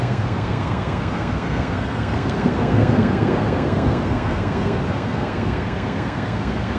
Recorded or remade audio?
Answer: remade